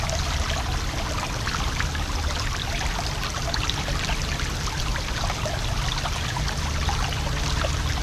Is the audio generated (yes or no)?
no